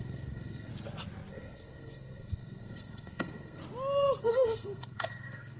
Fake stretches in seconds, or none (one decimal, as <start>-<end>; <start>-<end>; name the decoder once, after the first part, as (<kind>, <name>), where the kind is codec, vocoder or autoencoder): 0.0-0.7 (codec, SNAC); 1.3-3.6; 4.2-5.6